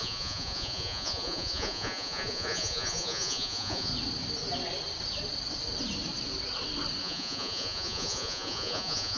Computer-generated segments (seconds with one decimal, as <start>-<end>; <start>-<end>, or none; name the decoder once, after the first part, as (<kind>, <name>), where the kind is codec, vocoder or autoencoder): 0.0-3.9 (vocoder, Vocos); 7.0-9.2